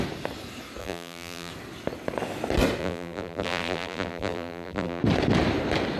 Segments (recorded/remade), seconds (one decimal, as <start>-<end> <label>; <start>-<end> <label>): 0.0-0.8 recorded; 0.8-1.5 remade; 1.5-2.8 recorded; 2.8-5.0 remade; 5.0-6.0 recorded